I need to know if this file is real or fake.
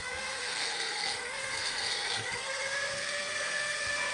fake